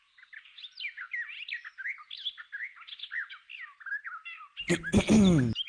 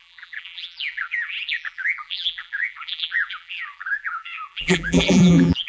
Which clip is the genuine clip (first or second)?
first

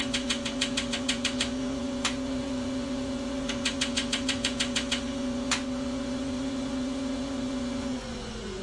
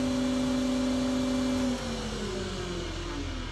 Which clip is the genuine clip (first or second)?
second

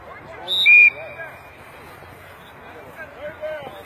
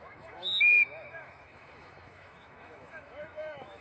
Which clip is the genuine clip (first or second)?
first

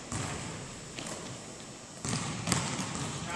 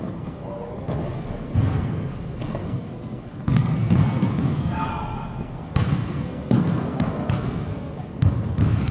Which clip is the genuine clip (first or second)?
first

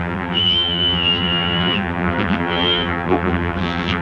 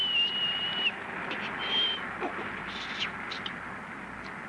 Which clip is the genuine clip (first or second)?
second